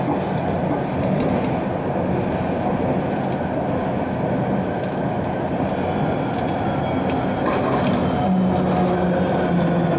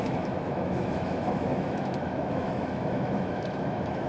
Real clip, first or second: first